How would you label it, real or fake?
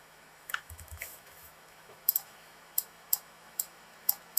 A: fake